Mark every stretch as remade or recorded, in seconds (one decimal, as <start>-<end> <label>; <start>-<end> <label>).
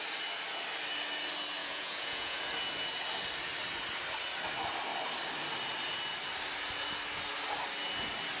0.0-1.6 recorded; 1.6-2.4 remade; 2.4-8.4 recorded